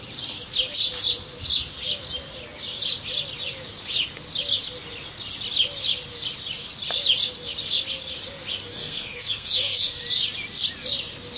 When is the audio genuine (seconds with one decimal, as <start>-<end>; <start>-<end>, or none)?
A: 0.0-8.8; 10.0-11.4